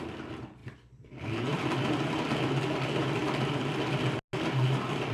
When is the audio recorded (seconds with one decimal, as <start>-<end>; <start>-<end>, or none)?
0.0-0.6; 1.9-5.1